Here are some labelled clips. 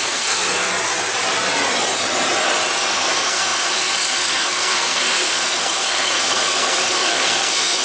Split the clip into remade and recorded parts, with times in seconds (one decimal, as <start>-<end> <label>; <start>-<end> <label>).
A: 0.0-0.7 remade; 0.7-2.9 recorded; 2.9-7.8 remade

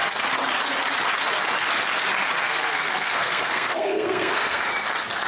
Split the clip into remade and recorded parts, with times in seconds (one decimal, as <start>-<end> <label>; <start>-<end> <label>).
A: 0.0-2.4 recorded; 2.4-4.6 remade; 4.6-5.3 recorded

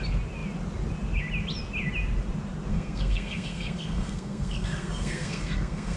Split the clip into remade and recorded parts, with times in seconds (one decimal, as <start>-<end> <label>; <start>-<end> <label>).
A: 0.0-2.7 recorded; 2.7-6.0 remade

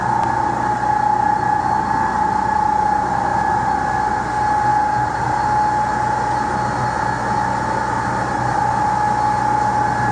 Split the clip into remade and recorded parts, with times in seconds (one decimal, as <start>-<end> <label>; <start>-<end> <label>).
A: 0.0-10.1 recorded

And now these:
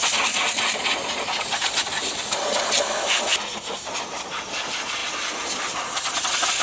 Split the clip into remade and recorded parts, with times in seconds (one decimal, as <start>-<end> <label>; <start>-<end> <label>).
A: 0.0-6.6 recorded

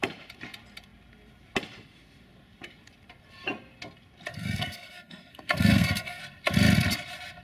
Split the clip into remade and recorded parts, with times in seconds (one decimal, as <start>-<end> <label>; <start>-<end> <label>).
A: 0.0-4.3 recorded; 4.3-6.2 remade; 6.2-7.4 recorded

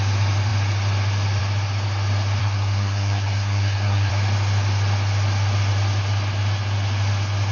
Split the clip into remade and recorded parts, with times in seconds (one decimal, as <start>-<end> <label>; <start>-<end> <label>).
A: 0.0-2.4 recorded; 2.4-4.1 remade; 4.1-7.5 recorded